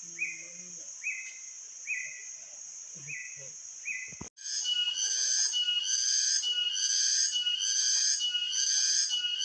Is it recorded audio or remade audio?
recorded